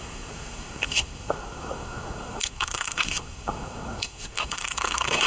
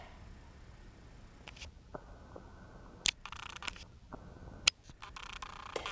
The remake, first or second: first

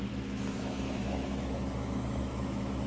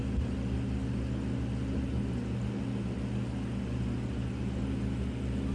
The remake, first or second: first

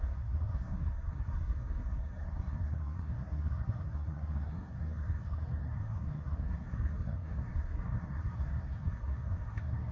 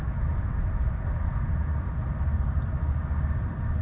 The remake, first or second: first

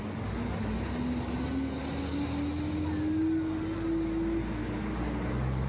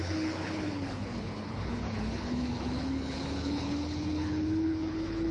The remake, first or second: second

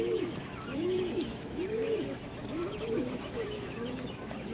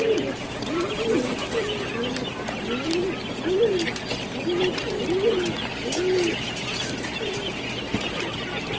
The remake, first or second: first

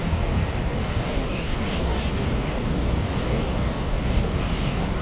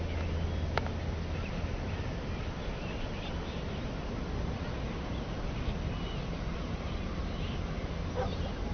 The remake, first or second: first